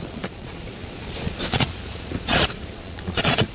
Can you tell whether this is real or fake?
fake